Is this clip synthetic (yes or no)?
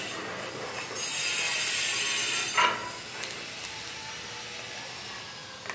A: no